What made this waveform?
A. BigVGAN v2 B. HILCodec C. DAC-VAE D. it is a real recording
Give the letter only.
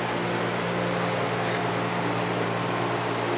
D